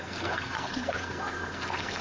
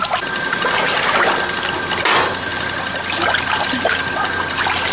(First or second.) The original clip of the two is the second